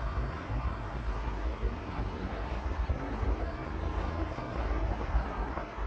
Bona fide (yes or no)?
no